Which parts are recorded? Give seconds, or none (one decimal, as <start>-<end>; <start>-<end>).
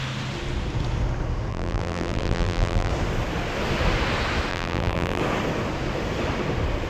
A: 0.0-1.5; 2.9-4.5; 5.2-6.9